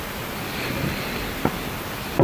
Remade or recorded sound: recorded